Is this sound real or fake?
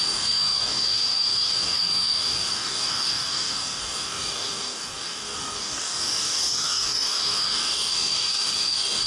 fake